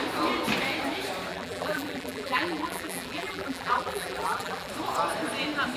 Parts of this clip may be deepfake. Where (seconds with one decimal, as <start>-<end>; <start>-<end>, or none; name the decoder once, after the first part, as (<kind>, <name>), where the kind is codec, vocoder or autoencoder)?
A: 1.3-4.7 (vocoder, BigVGAN v2)